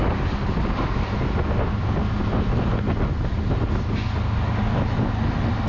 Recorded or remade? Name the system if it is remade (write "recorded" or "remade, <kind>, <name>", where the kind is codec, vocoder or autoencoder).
recorded